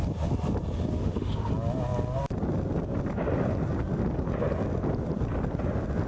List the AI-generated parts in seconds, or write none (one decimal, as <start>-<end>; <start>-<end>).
1.0-1.5